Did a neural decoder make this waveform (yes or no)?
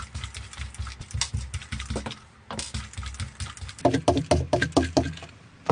no